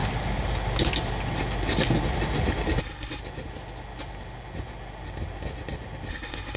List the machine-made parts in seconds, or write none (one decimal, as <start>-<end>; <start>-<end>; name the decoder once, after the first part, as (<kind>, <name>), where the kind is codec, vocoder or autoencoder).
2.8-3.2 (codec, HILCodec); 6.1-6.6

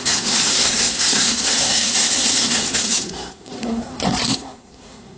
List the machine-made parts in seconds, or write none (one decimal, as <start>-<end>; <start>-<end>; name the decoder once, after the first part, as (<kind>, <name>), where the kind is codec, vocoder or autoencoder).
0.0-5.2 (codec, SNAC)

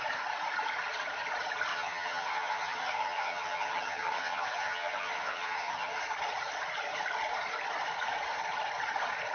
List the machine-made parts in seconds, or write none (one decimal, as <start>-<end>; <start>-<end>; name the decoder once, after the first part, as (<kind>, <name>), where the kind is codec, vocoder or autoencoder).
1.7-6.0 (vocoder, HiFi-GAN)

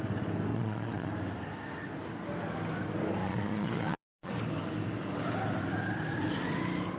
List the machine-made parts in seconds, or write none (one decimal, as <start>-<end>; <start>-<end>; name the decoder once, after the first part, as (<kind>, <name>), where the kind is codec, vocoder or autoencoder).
0.5-1.1 (vocoder, Vocos); 3.2-4.3

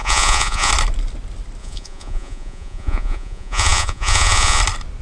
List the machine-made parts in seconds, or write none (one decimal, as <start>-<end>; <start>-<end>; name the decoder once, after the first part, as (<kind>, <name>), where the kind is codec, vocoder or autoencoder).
0.0-0.7 (vocoder, Vocos); 1.6-4.6